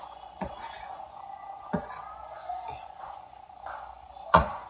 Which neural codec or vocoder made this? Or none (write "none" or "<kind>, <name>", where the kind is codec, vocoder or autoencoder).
vocoder, Vocos